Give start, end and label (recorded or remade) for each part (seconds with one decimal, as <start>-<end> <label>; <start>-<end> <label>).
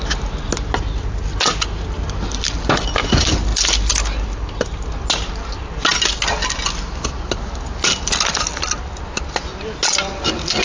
0.0-10.6 recorded